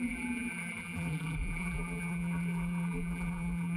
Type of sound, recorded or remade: remade